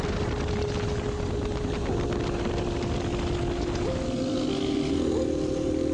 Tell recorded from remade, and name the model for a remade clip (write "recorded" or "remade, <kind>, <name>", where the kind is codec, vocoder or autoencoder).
recorded